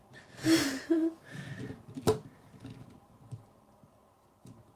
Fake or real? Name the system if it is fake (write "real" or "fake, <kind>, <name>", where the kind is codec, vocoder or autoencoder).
real